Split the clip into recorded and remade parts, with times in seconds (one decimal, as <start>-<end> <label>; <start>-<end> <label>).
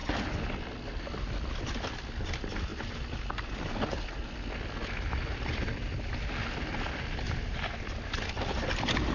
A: 0.0-9.1 recorded